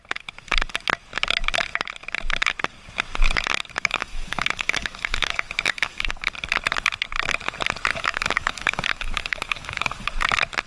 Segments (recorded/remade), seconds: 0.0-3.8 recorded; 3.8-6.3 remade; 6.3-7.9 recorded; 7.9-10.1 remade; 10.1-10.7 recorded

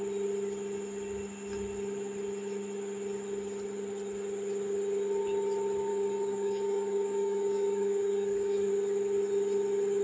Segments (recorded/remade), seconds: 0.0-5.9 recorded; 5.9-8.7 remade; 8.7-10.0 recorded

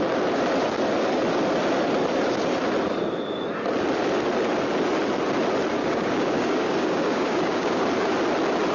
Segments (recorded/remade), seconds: 0.0-5.8 recorded; 5.8-7.8 remade; 7.8-8.7 recorded